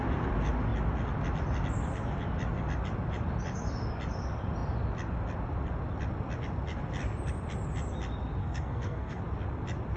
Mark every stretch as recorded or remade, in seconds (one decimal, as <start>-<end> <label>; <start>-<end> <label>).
0.0-8.4 recorded; 8.4-9.2 remade; 9.2-10.0 recorded